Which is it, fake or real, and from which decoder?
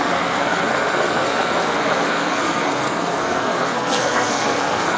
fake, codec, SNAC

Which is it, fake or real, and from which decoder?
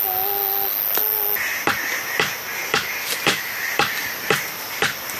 real